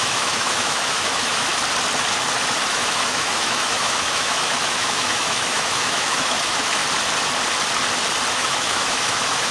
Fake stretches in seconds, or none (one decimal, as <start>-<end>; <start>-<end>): 0.0-1.5; 2.7-6.8; 8.3-9.5